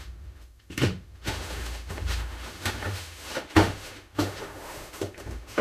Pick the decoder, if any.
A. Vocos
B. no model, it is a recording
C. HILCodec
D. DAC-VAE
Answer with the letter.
D